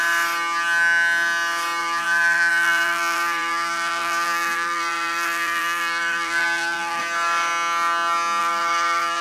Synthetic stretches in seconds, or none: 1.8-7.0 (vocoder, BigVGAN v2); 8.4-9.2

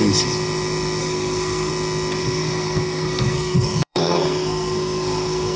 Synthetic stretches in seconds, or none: 1.0-1.7 (codec, SNAC); 2.2-5.6